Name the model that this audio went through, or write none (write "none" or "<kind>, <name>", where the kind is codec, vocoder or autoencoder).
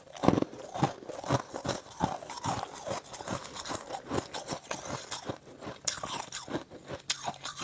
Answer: none